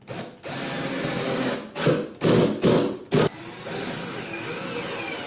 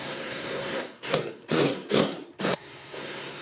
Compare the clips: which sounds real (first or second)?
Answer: first